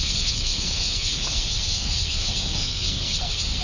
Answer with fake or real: fake